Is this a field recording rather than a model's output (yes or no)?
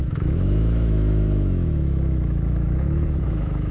no